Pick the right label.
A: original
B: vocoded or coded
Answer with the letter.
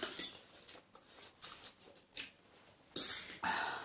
A